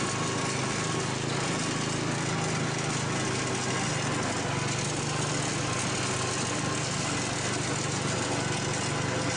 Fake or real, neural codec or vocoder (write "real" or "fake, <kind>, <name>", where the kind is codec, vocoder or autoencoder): real